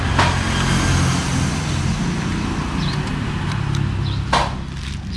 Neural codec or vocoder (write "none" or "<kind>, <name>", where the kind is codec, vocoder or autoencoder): none